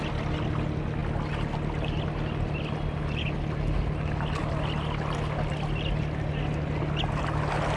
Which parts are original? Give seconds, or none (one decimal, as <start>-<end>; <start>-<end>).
0.0-7.8